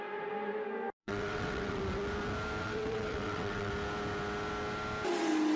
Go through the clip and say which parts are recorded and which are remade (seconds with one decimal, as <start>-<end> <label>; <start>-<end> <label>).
0.0-1.0 recorded; 1.0-1.8 remade; 1.8-2.6 recorded; 2.6-3.7 remade; 3.7-5.6 recorded